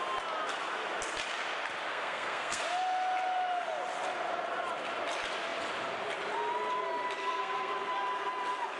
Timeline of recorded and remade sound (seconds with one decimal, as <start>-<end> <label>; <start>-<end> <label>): 0.0-1.9 recorded; 1.9-2.6 remade; 2.6-7.2 recorded; 7.2-7.7 remade; 7.7-8.8 recorded